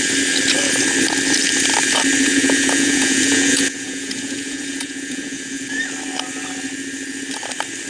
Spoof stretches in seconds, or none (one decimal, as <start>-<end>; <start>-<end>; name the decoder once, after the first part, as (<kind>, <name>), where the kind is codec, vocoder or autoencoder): 2.3-5.8 (vocoder, Vocos)